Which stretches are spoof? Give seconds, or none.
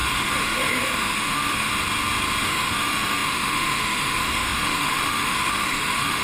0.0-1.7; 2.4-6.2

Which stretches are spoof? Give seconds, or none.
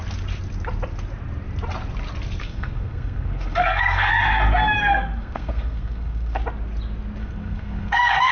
2.4-4.1; 4.9-6.4; 7.2-8.3